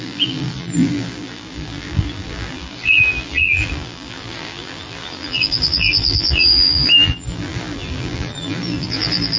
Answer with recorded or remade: remade